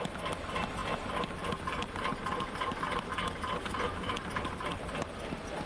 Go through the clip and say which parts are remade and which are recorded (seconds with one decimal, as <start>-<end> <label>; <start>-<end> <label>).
0.0-5.7 recorded